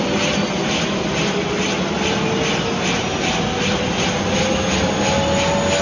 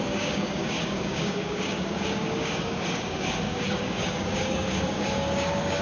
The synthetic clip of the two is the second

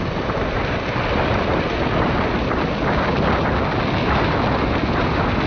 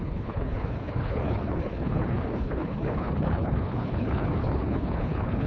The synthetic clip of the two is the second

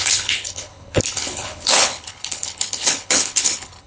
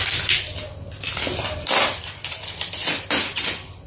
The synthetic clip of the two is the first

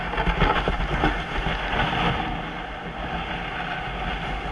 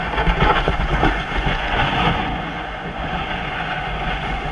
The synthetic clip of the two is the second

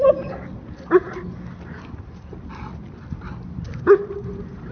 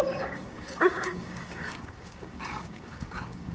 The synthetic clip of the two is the second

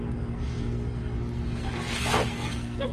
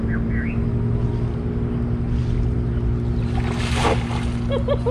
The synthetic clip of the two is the first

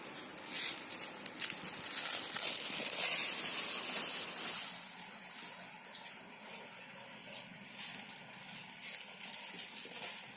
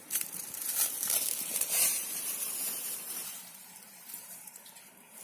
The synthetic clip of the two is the second